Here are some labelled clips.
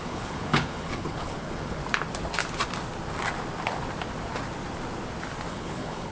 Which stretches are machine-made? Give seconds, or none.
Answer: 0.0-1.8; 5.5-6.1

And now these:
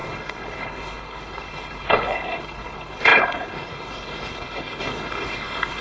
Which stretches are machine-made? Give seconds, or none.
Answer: 0.0-5.8

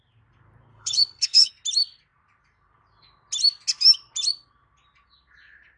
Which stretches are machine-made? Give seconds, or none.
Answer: 0.7-1.5

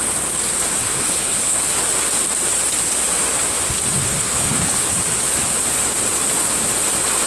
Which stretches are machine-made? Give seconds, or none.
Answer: 0.8-1.6; 4.0-4.9

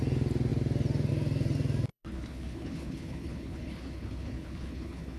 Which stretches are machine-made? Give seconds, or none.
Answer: 1.9-5.2

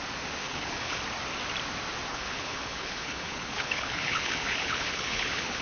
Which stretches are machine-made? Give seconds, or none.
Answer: 0.4-1.0; 2.1-5.6

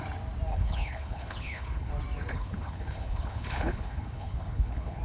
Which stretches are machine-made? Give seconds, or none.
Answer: 0.5-1.9; 2.3-5.0

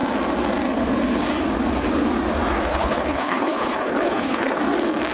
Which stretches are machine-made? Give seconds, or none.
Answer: 2.7-4.6